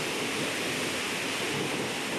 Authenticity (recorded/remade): recorded